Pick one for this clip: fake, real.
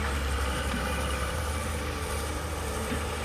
fake